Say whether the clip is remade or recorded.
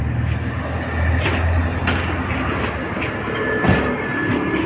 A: recorded